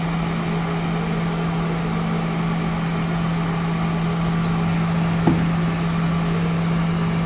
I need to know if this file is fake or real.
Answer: real